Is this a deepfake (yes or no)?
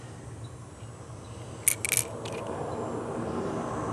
no